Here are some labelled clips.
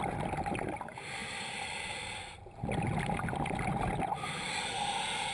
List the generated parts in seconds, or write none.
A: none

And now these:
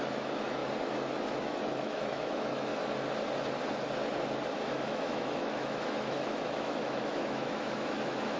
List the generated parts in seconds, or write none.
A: 0.0-0.6 (autoencoder, DAC-VAE); 1.4-2.7; 4.8-8.4

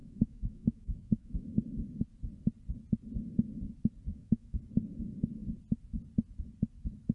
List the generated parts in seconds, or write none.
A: 0.0-1.6 (autoencoder, DAC-VAE); 4.1-4.6

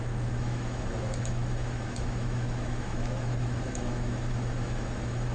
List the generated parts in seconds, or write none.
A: 0.0-5.3 (autoencoder, DAC-VAE)

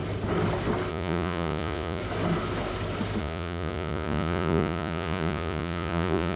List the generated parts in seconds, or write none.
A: 0.9-2.0 (vocoder, Vocos); 3.2-6.4

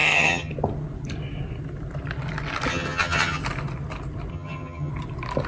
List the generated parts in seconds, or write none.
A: 0.0-0.5 (vocoder, HiFi-GAN); 2.7-3.4; 4.3-4.9

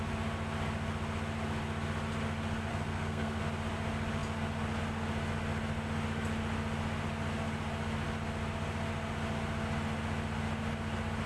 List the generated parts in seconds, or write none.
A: 2.7-3.4 (codec, SNAC)